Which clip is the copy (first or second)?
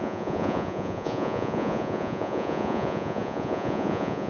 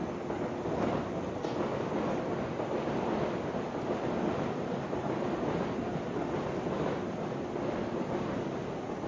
first